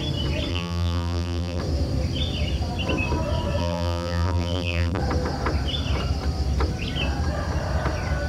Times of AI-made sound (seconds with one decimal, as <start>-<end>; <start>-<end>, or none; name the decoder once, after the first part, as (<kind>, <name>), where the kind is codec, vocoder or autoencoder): 0.5-1.6 (vocoder, BigVGAN v2); 3.6-5.0

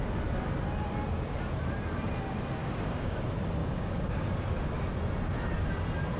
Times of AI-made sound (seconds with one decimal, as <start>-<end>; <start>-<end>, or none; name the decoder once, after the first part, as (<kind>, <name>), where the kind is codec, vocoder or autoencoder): 2.6-3.2 (codec, DAC); 3.6-4.3